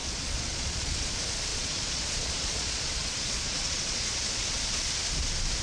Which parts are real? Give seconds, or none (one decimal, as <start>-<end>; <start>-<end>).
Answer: 1.1-1.5; 4.9-5.6